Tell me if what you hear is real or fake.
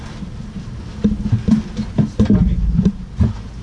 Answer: real